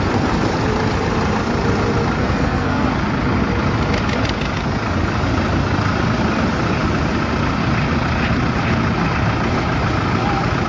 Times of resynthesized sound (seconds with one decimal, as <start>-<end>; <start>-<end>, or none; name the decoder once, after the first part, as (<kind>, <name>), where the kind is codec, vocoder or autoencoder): 2.2-2.9 (codec, SNAC)